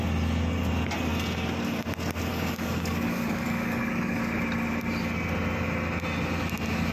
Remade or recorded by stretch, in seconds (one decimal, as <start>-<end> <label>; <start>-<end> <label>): 0.0-2.3 recorded; 2.3-4.2 remade; 4.2-6.9 recorded